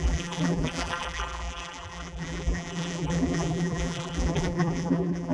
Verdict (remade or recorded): remade